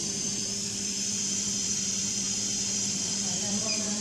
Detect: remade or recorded remade